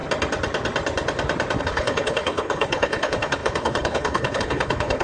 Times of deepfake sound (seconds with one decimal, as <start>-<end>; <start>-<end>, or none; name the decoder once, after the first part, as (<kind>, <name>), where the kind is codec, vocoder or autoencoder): 1.6-5.0 (codec, HILCodec)